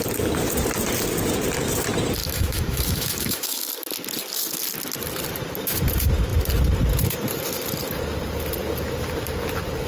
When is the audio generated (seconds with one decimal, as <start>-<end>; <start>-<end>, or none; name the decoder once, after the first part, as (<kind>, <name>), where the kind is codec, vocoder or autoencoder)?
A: 2.2-3.7 (autoencoder, DAC-VAE)